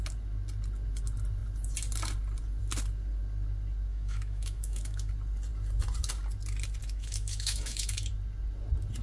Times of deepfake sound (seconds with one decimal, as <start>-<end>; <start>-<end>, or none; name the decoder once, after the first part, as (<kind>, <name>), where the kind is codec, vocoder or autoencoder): 3.9-5.1 (autoencoder, DAC-VAE); 6.8-8.1